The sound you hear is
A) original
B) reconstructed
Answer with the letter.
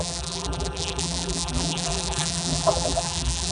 B